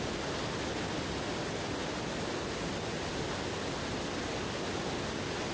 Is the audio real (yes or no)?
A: yes